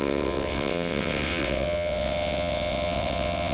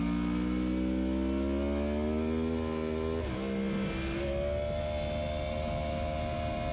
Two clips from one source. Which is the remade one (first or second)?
first